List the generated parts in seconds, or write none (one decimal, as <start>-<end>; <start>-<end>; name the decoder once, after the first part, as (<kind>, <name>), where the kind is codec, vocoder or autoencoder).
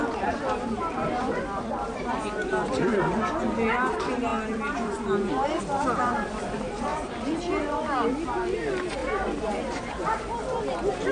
0.0-3.0 (vocoder, BigVGAN v2); 6.9-7.4; 9.0-10.6